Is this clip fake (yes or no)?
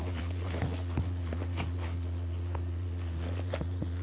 yes